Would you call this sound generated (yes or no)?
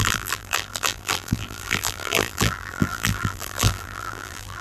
yes